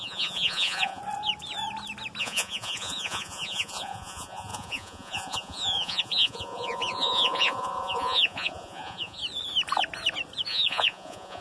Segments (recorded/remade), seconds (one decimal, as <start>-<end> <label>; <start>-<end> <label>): 0.0-1.0 remade; 1.0-2.2 recorded; 2.2-9.2 remade; 9.2-10.5 recorded; 10.5-11.4 remade